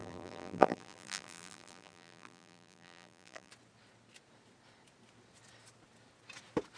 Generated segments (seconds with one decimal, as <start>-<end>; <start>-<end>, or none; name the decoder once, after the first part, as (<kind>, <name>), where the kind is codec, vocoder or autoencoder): 0.0-3.5 (vocoder, BigVGAN v2)